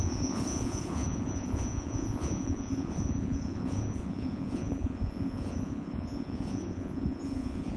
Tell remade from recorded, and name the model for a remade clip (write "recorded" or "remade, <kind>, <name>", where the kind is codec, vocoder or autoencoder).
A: remade, vocoder, Vocos